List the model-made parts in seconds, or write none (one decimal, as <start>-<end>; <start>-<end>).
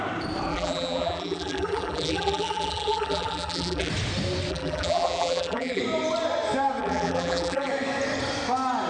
0.5-3.9; 4.5-5.8; 6.8-7.7